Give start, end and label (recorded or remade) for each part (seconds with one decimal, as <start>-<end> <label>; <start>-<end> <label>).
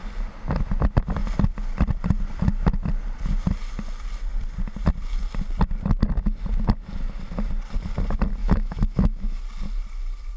0.0-8.4 recorded; 8.4-9.4 remade; 9.4-10.4 recorded